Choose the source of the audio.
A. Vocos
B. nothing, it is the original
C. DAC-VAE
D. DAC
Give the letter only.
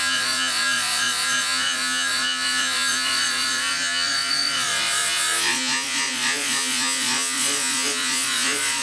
A